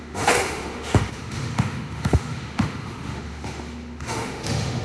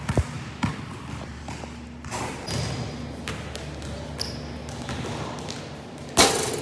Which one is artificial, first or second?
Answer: first